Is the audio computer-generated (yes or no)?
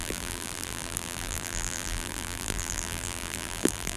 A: yes